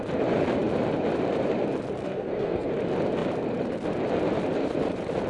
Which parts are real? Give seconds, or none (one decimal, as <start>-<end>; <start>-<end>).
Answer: 0.0-2.0; 2.7-5.3